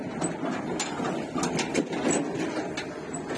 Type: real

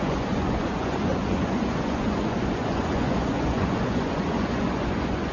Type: fake